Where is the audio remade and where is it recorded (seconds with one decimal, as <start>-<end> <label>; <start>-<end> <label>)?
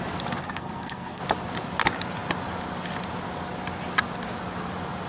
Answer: 0.0-0.4 recorded; 0.4-1.2 remade; 1.2-5.1 recorded